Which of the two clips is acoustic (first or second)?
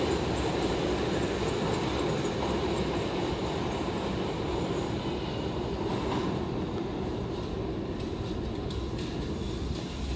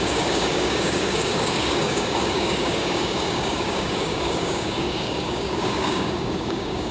first